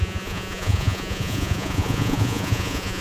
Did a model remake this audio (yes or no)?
yes